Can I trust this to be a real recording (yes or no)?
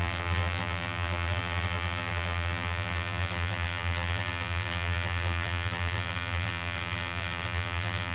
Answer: no